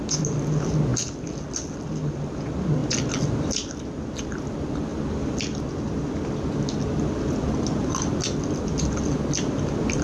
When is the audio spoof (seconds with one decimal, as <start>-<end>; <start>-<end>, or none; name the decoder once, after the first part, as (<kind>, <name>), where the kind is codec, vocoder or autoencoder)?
none